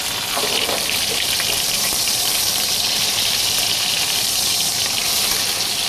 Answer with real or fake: fake